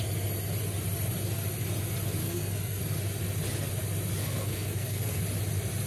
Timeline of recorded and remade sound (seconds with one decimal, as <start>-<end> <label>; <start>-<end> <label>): 0.0-2.2 recorded; 2.2-2.8 remade; 2.8-4.2 recorded; 4.2-5.2 remade; 5.2-5.9 recorded